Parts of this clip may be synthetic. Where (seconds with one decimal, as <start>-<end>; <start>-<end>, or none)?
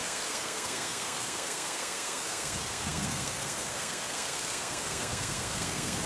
0.0-6.1